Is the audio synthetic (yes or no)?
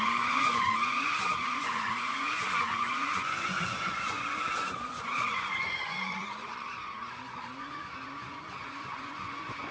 yes